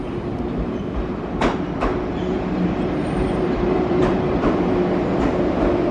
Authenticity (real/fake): fake